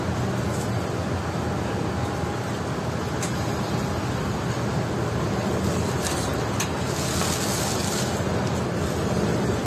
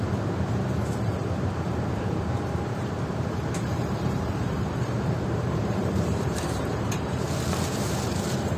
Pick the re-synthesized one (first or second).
second